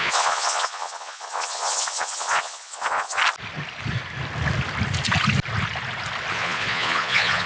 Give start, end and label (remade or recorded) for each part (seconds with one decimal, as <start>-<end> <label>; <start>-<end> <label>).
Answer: 0.0-3.2 remade; 3.2-6.3 recorded; 6.3-7.5 remade